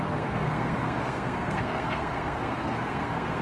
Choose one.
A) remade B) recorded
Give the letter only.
A